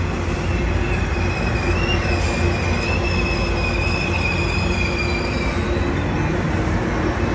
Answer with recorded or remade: recorded